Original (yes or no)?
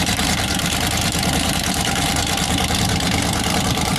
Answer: no